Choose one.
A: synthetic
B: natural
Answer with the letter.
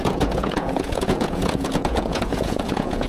A